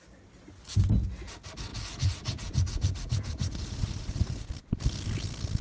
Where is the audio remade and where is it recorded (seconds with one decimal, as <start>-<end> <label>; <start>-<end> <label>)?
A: 0.0-1.7 recorded; 1.7-4.5 remade; 4.5-5.6 recorded